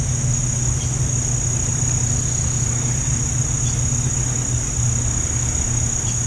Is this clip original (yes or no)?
yes